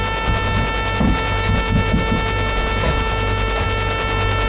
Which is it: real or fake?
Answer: real